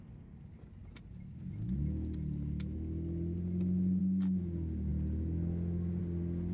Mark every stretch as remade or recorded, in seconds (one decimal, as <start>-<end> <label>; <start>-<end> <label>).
0.0-6.5 recorded